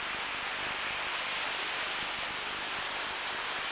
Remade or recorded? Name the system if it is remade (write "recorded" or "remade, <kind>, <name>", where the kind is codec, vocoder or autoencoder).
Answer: recorded